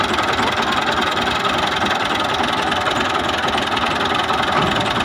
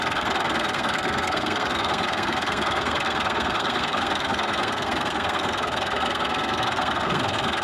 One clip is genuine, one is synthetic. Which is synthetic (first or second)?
second